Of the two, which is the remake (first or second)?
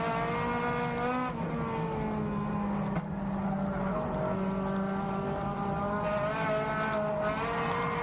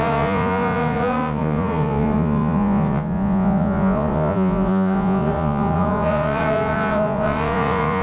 second